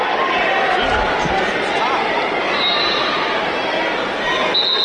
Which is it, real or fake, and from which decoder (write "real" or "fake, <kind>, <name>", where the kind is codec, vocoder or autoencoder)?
real